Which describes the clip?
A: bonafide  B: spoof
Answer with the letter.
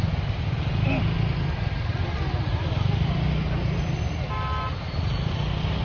A